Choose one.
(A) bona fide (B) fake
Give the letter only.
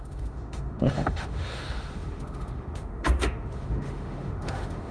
B